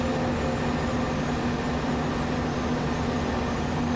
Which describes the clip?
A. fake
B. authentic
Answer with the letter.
B